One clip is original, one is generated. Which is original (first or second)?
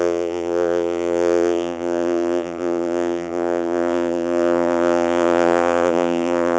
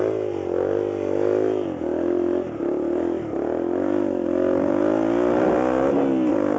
second